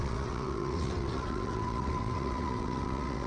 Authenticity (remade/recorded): remade